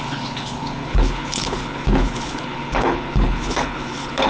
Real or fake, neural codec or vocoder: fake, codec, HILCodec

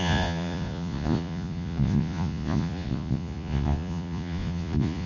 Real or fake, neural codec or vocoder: fake, vocoder, Vocos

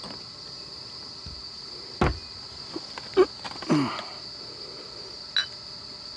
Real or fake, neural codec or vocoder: real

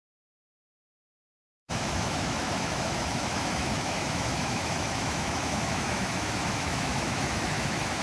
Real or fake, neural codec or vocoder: fake, autoencoder, DAC-VAE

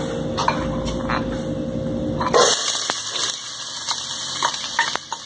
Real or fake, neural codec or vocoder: real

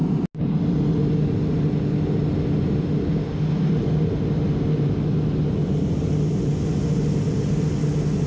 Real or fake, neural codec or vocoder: real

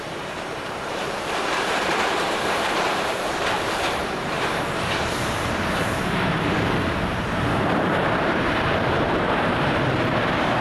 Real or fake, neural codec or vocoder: fake, vocoder, BigVGAN v2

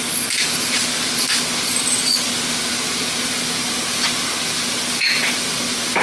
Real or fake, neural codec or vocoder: real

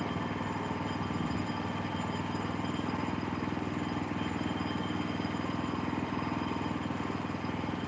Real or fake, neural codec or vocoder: real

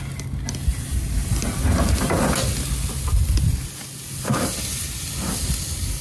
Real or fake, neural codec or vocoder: real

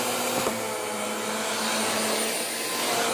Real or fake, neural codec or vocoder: real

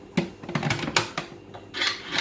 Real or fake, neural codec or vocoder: real